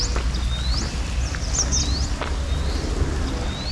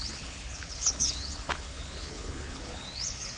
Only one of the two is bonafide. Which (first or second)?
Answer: first